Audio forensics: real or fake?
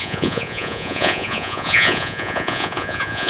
fake